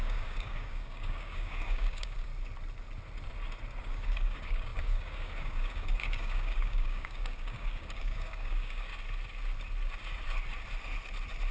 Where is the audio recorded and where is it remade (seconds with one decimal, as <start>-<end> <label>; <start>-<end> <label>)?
0.0-2.3 remade; 2.3-3.8 recorded; 3.8-8.9 remade; 8.9-11.5 recorded